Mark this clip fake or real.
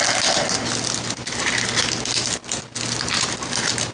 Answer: real